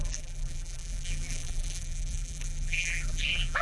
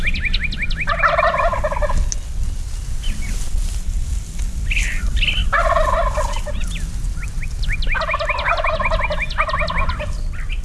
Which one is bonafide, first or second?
second